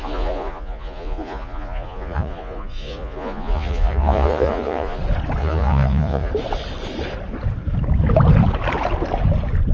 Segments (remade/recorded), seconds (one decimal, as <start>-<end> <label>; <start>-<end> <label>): 0.0-5.0 remade; 5.0-5.4 recorded; 5.4-6.3 remade; 6.3-9.7 recorded